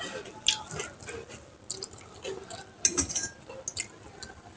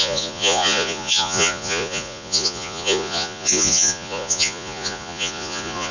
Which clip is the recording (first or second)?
first